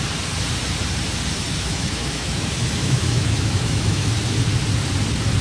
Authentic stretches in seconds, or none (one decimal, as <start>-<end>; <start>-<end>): 0.0-1.5; 4.1-5.4